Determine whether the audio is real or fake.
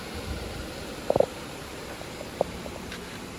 fake